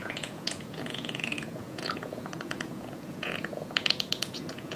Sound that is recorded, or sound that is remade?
remade